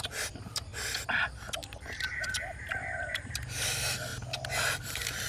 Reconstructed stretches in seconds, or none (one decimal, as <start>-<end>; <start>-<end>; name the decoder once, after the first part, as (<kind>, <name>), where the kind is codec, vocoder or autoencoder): 0.0-0.7 (vocoder, BigVGAN v2); 3.2-4.1; 4.8-5.3